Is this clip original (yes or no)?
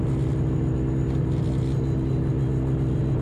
yes